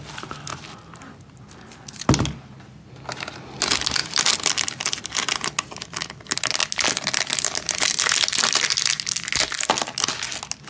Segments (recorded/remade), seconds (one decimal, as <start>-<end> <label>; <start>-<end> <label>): 0.0-10.7 recorded